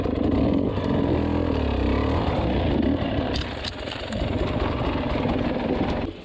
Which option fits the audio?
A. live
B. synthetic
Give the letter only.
A